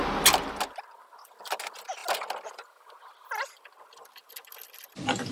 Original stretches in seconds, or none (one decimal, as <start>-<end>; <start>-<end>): 0.0-5.3